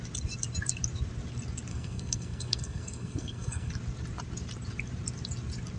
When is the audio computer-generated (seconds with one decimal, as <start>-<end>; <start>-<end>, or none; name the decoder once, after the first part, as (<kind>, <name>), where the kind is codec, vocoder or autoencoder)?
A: 1.7-3.7 (codec, SNAC)